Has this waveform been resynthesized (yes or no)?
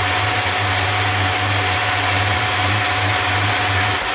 no